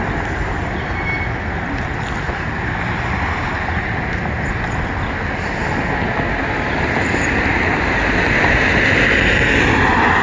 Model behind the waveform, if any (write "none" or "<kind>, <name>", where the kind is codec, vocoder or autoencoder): none